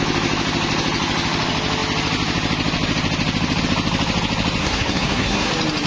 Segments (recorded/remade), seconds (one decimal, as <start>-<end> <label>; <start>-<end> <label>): 0.0-4.6 recorded; 4.6-5.5 remade; 5.5-5.9 recorded